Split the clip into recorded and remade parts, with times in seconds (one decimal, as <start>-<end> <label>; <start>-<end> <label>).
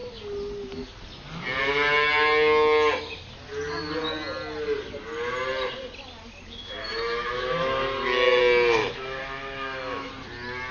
0.0-6.8 recorded; 6.8-8.4 remade; 8.4-8.8 recorded; 8.8-10.1 remade; 10.1-10.7 recorded